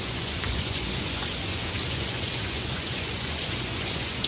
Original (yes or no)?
no